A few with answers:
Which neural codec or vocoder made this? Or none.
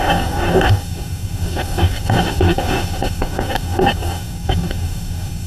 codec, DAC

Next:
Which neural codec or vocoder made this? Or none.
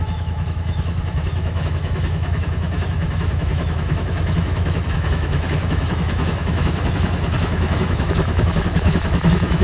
autoencoder, DAC-VAE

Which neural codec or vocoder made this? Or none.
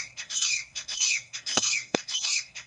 codec, SNAC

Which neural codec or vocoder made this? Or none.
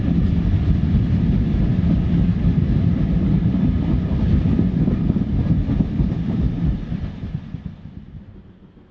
none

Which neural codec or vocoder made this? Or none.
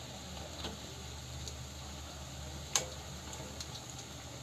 none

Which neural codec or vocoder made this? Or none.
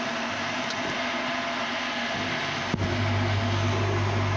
none